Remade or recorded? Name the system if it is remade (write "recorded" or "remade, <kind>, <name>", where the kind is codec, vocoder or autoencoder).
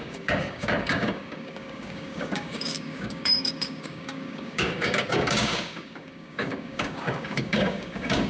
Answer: remade, codec, DAC